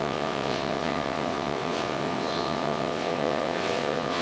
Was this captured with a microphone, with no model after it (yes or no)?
no